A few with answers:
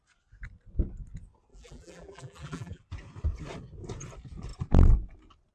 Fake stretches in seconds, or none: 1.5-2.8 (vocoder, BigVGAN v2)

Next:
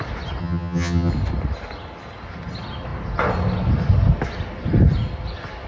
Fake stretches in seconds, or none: 0.4-1.1 (vocoder, HiFi-GAN)

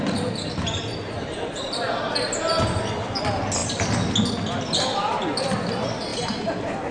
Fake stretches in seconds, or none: none

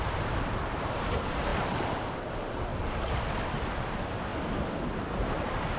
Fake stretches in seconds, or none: 0.0-2.7 (vocoder, BigVGAN v2); 3.8-4.3; 5.1-5.8

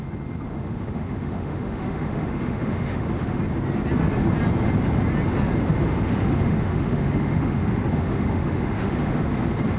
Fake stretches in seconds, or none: 0.5-3.4 (autoencoder, DAC-VAE); 5.7-9.2

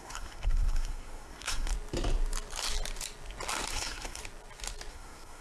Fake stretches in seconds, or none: 0.0-1.7 (codec, SNAC); 3.7-4.2; 4.9-5.4

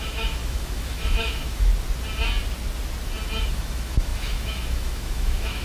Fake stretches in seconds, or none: 0.0-1.7 (autoencoder, DAC-VAE); 3.4-5.6